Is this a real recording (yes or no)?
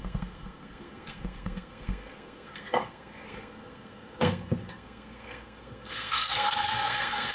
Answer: no